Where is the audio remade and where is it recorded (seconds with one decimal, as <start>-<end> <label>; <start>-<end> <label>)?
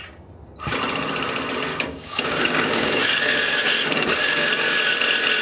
0.0-1.7 recorded; 1.7-4.9 remade; 4.9-5.4 recorded